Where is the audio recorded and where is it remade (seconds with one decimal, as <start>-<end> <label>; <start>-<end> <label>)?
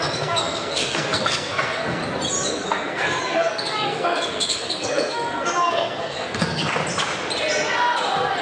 0.0-2.0 remade; 2.0-2.5 recorded; 2.5-6.8 remade; 6.8-8.4 recorded